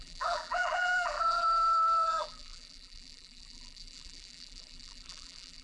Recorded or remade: remade